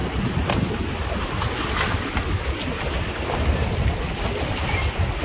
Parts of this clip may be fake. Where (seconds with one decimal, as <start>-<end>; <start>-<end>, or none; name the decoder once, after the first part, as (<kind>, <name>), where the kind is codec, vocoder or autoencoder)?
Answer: none